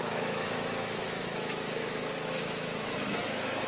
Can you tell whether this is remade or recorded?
remade